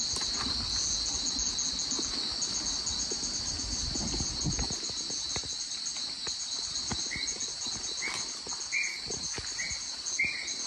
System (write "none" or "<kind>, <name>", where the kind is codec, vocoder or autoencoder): none